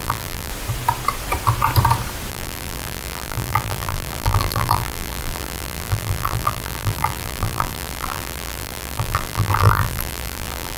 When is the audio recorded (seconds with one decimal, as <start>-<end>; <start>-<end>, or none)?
0.5-2.3